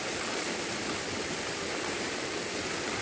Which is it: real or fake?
real